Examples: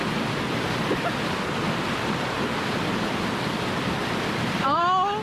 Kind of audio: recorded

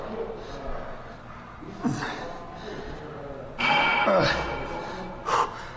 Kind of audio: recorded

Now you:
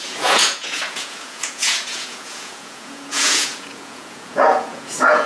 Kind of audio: remade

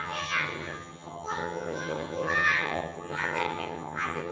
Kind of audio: remade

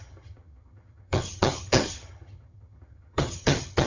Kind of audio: remade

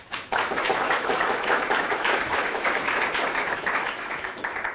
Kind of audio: remade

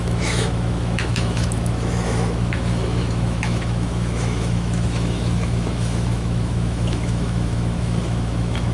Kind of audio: remade